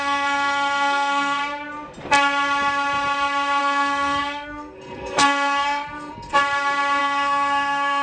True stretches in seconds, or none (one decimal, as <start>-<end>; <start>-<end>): 1.4-3.6; 6.4-7.0